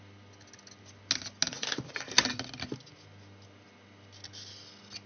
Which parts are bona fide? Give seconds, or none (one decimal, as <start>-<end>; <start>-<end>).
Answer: 0.0-5.1